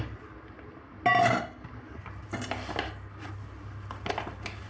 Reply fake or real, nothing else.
real